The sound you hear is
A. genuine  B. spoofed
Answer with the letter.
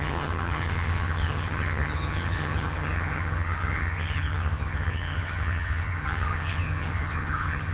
B